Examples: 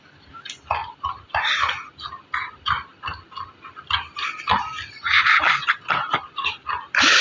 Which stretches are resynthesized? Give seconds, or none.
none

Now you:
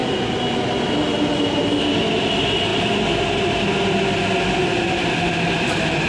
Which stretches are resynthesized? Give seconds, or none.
none